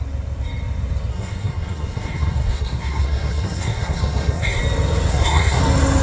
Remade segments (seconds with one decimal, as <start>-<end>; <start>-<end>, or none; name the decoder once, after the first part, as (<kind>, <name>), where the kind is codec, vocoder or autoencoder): 1.1-4.6 (codec, SNAC); 5.1-5.6